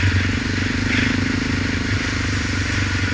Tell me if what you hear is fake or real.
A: real